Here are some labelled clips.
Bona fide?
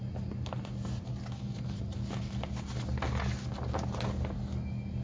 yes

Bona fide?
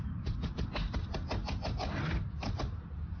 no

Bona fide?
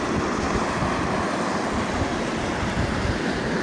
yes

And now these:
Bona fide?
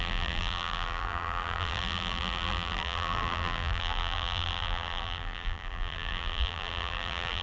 no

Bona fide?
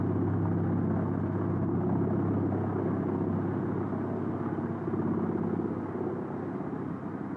yes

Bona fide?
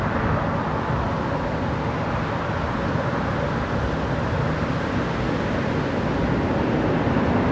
yes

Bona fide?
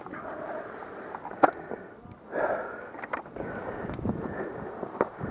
no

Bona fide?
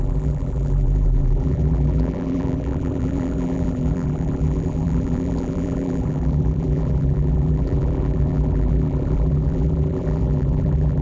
no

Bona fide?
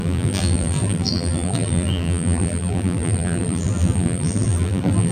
no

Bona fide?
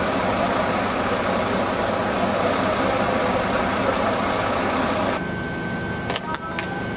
yes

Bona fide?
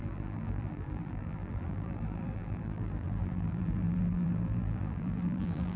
no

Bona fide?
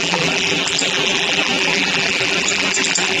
no